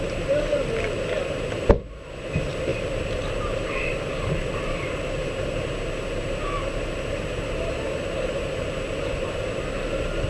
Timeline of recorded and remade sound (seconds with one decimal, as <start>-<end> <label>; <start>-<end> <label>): 0.0-2.7 recorded; 2.7-5.1 remade; 5.1-10.3 recorded